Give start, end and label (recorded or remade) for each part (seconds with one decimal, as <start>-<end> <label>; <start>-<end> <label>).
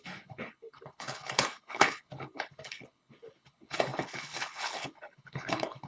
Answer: 0.0-5.9 remade